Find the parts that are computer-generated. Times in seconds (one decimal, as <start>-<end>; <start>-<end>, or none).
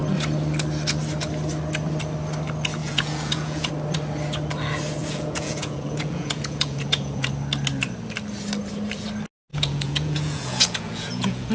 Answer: 2.8-3.7; 5.0-7.3; 9.5-11.5